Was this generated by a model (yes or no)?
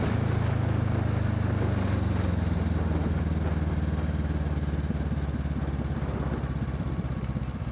no